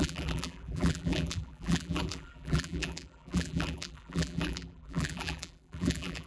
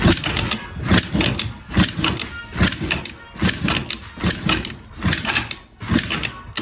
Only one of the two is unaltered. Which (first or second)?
second